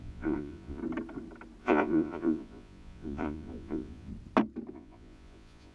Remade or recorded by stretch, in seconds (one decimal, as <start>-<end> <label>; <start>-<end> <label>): 0.0-0.8 remade; 0.8-1.6 recorded; 1.6-4.1 remade; 4.1-4.7 recorded; 4.7-5.7 remade